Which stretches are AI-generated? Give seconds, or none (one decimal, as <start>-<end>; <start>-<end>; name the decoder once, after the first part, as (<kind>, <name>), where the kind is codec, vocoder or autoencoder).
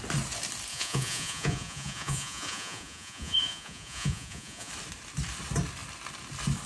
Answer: 0.7-4.7 (vocoder, Vocos)